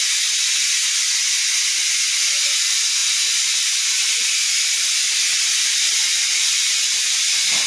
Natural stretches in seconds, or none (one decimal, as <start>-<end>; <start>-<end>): 0.0-7.7

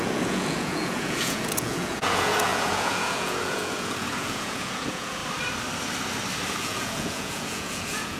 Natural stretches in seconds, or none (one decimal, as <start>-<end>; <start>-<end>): 5.2-6.6

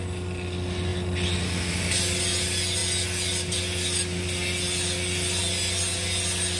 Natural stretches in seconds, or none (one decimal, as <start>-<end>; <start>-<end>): 0.0-6.6

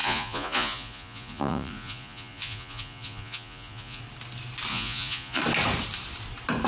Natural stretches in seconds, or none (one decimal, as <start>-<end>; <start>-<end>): 4.0-4.7; 5.4-6.7

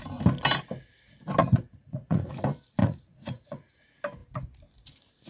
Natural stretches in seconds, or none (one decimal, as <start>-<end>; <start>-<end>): 0.0-1.4; 2.3-2.8; 3.8-5.3

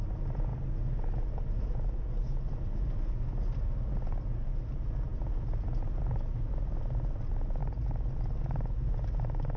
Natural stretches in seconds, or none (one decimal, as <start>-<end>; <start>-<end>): 0.0-9.6

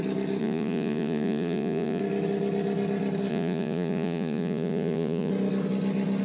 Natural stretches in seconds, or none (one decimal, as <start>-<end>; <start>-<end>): 0.0-0.4; 2.0-3.3; 5.3-6.2